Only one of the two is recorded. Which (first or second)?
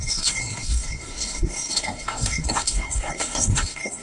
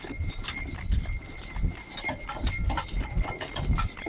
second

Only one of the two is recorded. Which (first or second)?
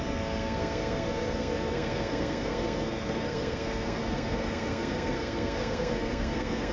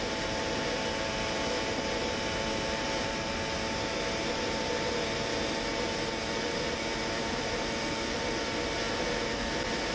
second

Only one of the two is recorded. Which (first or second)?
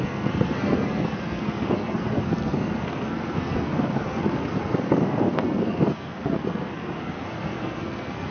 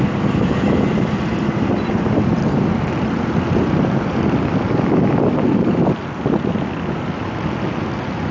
second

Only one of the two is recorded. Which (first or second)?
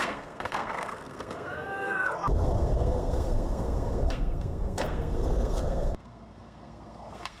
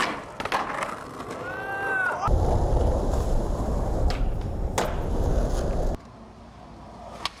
second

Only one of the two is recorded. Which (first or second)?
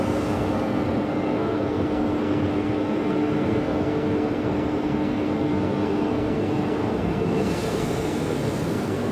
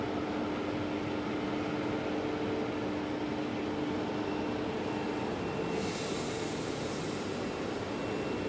second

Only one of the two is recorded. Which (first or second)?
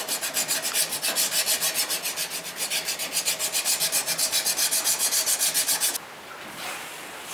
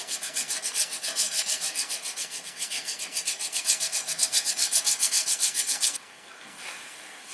first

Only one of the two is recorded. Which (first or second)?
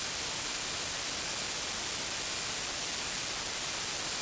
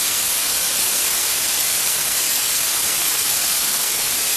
first